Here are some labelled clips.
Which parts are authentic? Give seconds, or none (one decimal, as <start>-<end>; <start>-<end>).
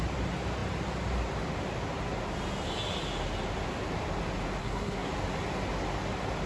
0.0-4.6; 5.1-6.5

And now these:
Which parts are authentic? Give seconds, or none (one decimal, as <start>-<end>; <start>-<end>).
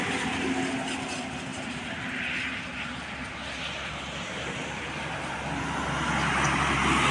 0.0-7.1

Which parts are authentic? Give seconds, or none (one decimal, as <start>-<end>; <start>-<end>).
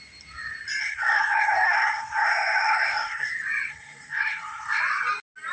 0.0-0.8; 3.3-3.7; 4.8-5.5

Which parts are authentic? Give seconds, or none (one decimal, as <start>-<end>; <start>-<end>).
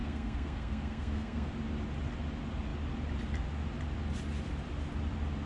1.5-5.5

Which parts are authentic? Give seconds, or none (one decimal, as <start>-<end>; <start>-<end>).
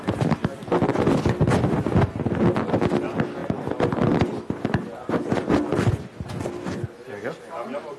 0.0-8.0